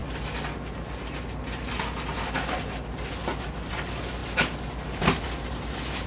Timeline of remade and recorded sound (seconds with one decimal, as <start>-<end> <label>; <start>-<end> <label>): 0.0-6.1 recorded